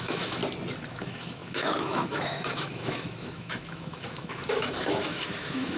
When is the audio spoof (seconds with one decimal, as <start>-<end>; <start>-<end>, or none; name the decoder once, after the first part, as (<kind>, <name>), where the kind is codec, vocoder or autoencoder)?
0.0-0.4 (autoencoder, DAC-VAE); 0.9-5.8